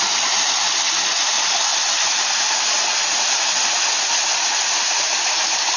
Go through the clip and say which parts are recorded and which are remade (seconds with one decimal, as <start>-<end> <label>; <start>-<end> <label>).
0.0-5.8 recorded